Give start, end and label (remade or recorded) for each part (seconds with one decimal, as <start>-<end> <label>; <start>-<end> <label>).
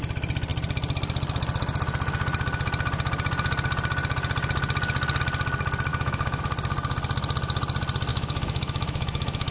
0.0-5.9 recorded; 5.9-6.4 remade; 6.4-8.1 recorded; 8.1-9.5 remade